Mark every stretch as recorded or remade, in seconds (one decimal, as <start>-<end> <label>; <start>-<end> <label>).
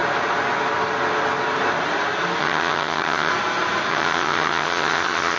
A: 0.0-2.4 recorded; 2.4-3.3 remade; 3.3-3.9 recorded; 3.9-5.4 remade